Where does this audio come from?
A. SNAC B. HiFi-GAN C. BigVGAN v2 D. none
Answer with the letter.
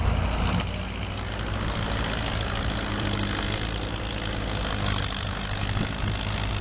D